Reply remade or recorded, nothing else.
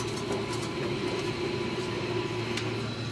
recorded